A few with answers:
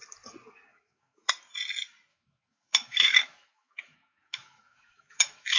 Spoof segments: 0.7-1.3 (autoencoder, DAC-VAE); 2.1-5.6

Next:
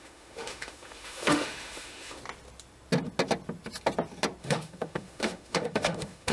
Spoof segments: 0.0-2.2 (autoencoder, DAC-VAE); 4.4-6.3

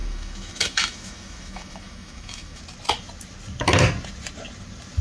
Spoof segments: 0.0-2.6 (autoencoder, DAC-VAE)

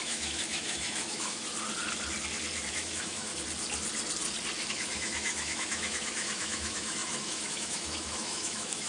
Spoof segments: 0.0-1.5 (autoencoder, DAC-VAE); 2.7-3.3; 4.7-8.9

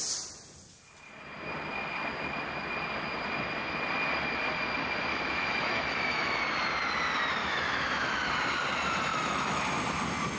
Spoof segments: 5.1-6.4 (autoencoder, DAC-VAE); 7.4-8.3; 9.1-9.6

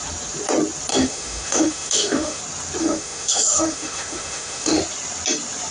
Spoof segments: 0.9-2.4 (autoencoder, DAC-VAE); 2.8-4.8